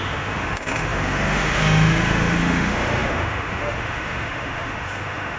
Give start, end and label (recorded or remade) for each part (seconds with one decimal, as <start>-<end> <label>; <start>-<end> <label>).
0.0-5.4 remade